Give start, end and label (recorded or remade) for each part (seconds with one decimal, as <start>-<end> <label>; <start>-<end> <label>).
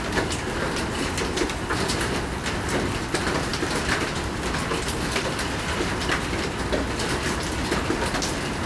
0.0-8.7 recorded